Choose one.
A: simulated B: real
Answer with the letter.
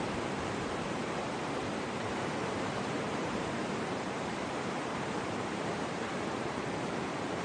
A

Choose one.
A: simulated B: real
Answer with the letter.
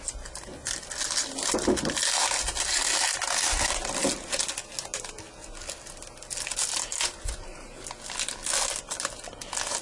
B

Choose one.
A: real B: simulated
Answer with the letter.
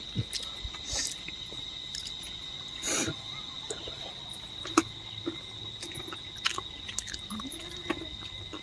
A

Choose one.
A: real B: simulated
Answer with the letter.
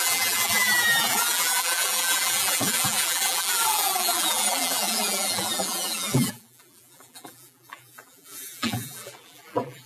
B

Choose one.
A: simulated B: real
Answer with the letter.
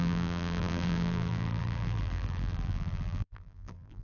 A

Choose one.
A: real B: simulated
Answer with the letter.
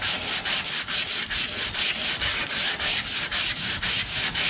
A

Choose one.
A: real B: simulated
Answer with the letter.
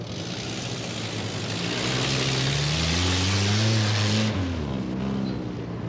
A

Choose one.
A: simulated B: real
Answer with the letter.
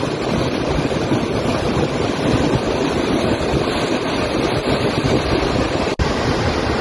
B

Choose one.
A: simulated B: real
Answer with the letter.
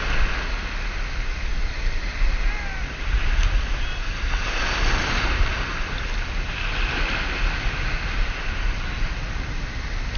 B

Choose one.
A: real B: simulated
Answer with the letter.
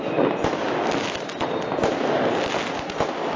A